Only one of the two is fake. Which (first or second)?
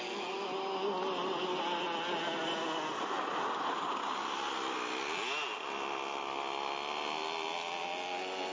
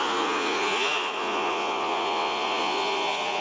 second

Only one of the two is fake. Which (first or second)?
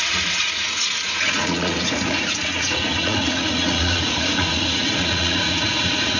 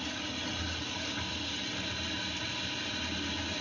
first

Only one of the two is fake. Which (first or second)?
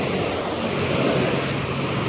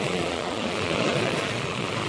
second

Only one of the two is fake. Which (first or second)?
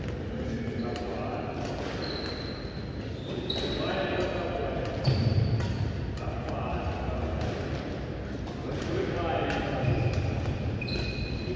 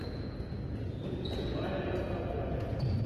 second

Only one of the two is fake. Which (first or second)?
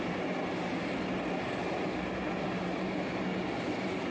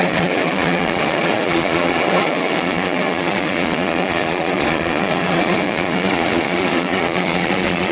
second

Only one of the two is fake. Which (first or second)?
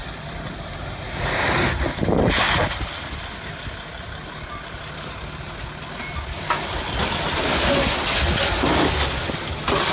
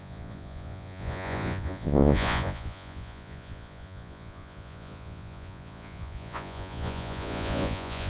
second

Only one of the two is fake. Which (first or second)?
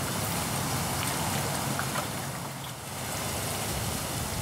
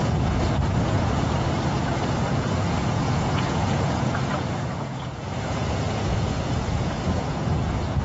second